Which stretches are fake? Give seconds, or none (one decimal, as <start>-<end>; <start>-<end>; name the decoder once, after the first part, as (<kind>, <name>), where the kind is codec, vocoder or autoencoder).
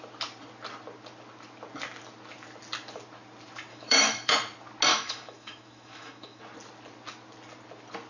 3.7-4.3 (autoencoder, DAC-VAE); 4.9-6.4